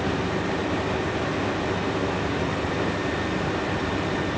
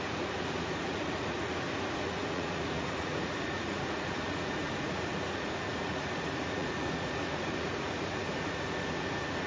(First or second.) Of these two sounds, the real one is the first